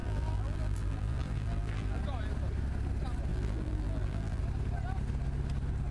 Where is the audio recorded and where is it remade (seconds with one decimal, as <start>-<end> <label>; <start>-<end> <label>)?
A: 0.0-2.0 remade; 2.0-3.3 recorded; 3.3-4.4 remade; 4.4-5.9 recorded